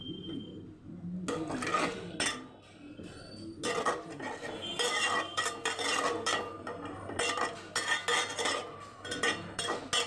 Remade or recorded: recorded